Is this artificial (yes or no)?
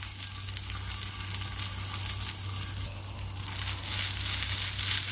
no